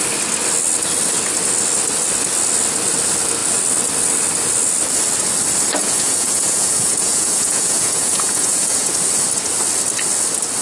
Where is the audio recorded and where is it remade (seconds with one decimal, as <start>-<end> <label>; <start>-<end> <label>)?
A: 0.0-5.8 recorded; 5.8-8.9 remade; 8.9-10.6 recorded